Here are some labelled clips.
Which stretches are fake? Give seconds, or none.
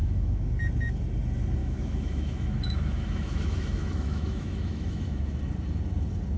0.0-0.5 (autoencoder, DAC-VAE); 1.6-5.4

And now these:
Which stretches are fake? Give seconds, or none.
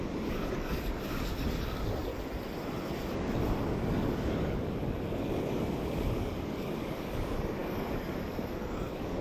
0.0-2.1 (codec, DAC); 3.6-9.2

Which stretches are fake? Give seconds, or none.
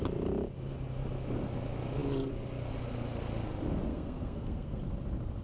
3.9-4.8 (codec, SNAC)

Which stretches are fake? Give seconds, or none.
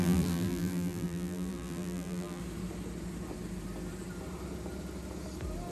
0.0-2.4 (vocoder, BigVGAN v2)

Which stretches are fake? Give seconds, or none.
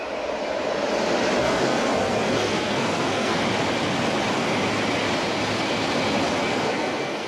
1.4-3.4 (codec, SNAC); 6.5-7.3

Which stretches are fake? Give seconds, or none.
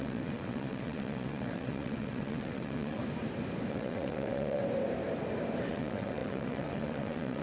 0.0-3.0 (vocoder, WaveNeXt); 3.7-4.6; 5.7-7.4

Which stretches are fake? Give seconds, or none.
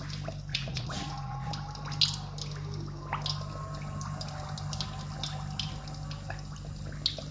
0.5-1.5 (vocoder, Vocos)